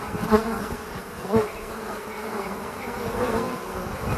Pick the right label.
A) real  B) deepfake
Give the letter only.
B